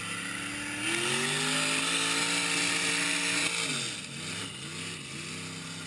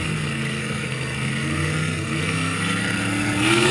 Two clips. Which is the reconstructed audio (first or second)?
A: second